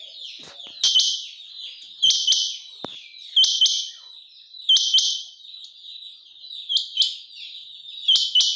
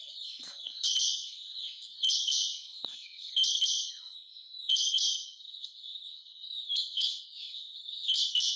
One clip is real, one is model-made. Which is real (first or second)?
first